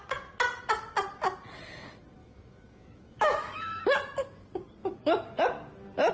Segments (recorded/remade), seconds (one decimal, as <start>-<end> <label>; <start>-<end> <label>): 0.0-2.2 recorded; 2.2-3.8 remade; 3.8-6.1 recorded